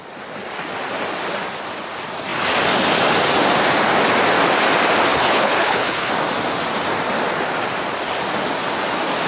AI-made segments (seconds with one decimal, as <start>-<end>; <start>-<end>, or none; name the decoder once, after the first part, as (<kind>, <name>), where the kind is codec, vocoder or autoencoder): 5.1-6.1 (codec, HILCodec)